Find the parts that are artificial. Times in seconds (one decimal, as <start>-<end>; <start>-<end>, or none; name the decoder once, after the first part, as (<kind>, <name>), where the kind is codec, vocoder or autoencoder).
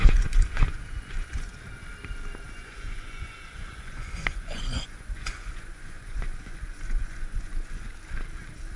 0.0-1.5 (vocoder, Vocos); 2.5-7.9